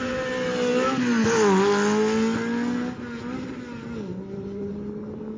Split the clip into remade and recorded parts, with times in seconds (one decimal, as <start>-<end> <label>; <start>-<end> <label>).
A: 0.0-4.1 recorded; 4.1-4.7 remade; 4.7-5.4 recorded